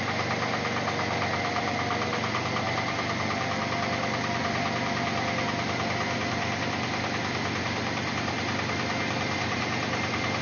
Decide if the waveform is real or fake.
real